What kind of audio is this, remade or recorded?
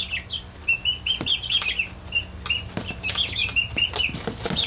recorded